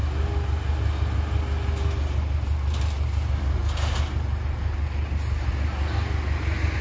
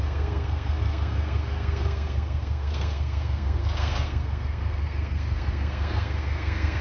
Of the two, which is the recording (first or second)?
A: first